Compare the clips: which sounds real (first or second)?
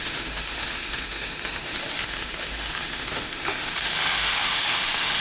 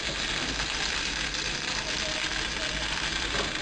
second